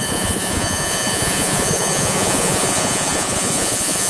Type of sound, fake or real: fake